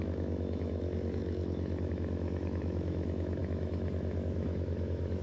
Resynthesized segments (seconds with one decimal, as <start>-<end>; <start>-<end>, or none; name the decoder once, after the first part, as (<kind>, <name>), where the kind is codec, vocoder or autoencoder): 0.0-5.2 (autoencoder, DAC-VAE)